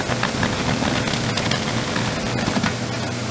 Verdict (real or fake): real